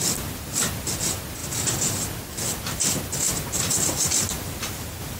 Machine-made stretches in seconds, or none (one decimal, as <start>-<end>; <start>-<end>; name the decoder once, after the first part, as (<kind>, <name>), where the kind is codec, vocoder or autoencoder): none